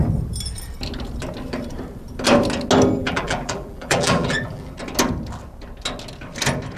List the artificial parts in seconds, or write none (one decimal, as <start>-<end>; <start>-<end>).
3.0-4.8